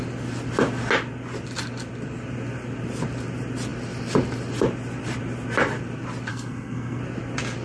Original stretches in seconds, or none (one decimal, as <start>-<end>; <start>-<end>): 0.0-6.3; 7.0-7.6

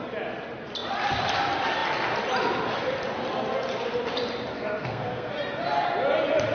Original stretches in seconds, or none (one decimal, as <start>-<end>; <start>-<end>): 0.0-4.5; 5.3-6.5

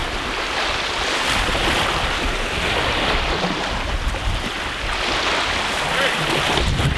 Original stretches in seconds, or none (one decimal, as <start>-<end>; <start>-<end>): 0.0-7.0